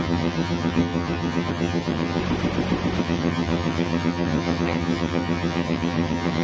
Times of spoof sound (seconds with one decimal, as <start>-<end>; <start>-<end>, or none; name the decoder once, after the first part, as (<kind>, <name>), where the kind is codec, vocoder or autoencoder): 0.0-2.2 (vocoder, HiFi-GAN); 3.0-6.4